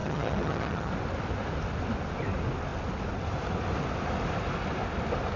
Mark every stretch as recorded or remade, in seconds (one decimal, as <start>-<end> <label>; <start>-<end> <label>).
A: 0.0-0.9 remade; 0.9-5.4 recorded